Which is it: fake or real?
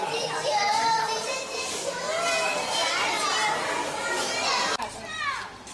real